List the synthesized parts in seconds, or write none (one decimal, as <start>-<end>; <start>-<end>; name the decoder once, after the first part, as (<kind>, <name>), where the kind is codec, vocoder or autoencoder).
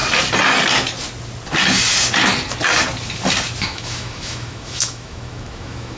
3.6-6.0 (autoencoder, DAC-VAE)